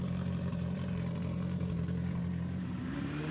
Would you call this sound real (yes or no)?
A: no